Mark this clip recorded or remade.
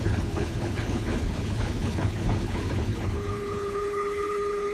remade